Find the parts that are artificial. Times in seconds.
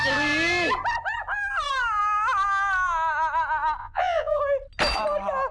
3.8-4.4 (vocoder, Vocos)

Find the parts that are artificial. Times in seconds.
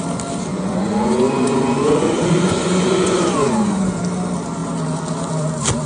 0.5-4.0 (vocoder, Vocos)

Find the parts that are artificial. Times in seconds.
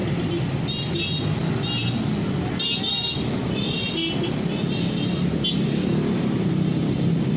none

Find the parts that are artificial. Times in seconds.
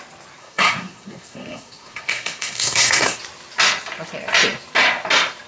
0.4-3.2 (codec, SNAC)